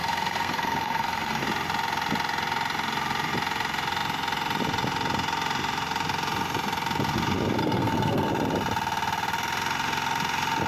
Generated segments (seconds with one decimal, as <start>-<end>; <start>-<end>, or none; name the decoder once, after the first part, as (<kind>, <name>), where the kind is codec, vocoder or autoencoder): 0.0-1.4 (codec, SNAC); 7.6-8.3